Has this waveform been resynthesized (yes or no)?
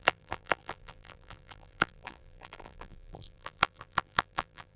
yes